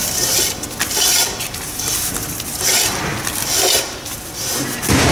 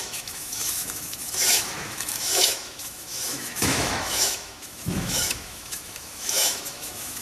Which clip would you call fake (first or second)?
second